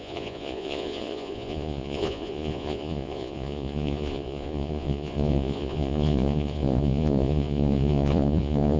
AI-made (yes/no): yes